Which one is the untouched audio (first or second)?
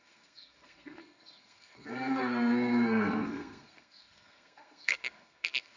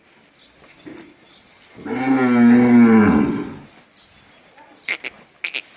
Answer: second